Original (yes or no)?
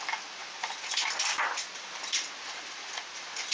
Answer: yes